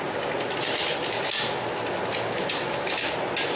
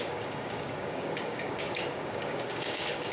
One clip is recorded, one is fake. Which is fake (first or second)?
second